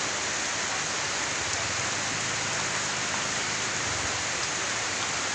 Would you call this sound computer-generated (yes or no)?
no